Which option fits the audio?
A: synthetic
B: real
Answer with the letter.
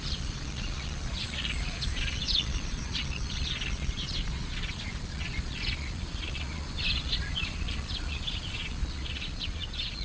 A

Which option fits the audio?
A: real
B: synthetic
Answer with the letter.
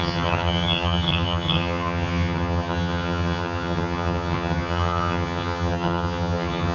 B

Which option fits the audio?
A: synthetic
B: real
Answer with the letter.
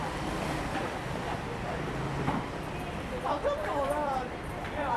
A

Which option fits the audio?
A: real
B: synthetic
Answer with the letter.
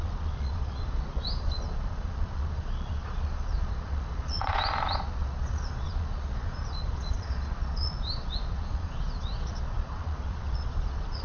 B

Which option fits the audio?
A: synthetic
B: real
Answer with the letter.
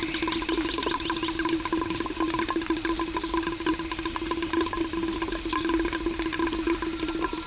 B